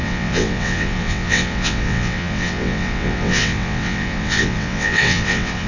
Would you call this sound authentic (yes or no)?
no